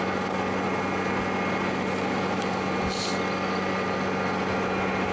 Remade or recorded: recorded